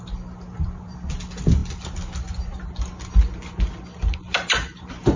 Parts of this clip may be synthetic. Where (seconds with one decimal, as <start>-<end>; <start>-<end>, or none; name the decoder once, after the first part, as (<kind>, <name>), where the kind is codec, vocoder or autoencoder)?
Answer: none